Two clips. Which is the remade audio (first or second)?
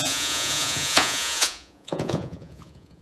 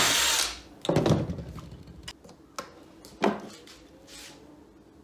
first